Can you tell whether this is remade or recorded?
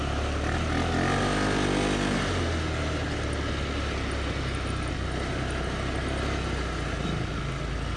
recorded